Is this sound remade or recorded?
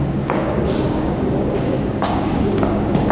remade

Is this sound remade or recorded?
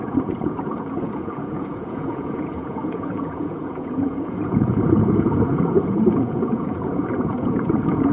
remade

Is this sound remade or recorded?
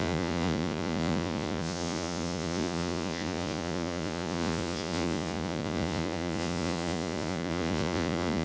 remade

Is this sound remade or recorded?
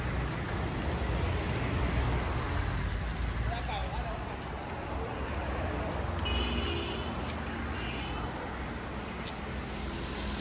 recorded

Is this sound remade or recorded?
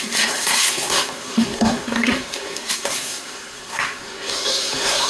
remade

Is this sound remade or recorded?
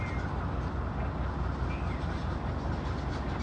recorded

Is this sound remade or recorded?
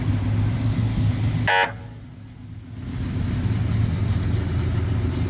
recorded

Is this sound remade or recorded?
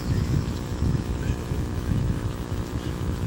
remade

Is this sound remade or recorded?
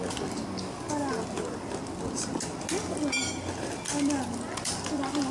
recorded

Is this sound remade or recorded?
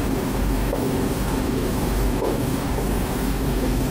remade